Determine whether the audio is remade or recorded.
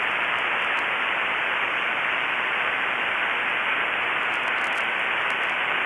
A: recorded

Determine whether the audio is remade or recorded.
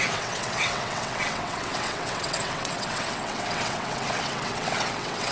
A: remade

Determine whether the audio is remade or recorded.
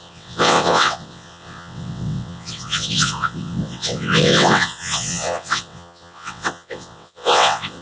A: remade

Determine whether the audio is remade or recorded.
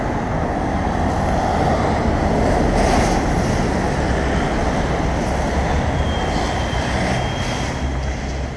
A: recorded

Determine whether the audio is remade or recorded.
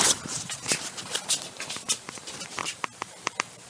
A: recorded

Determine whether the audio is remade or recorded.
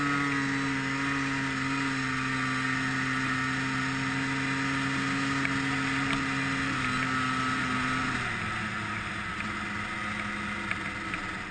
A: recorded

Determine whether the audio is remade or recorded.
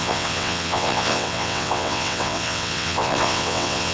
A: remade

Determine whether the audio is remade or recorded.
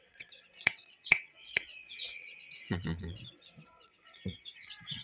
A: remade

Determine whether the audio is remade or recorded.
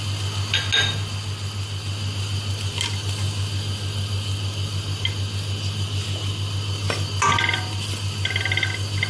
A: recorded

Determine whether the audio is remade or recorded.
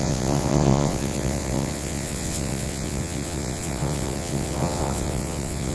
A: remade